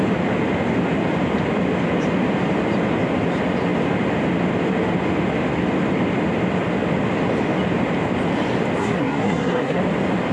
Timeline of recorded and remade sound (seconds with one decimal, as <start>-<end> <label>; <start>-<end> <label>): 0.0-8.8 recorded; 8.8-9.8 remade; 9.8-10.3 recorded